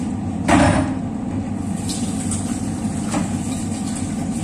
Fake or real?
real